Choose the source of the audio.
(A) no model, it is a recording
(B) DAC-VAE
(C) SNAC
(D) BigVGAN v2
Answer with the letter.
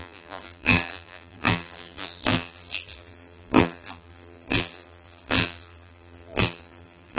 D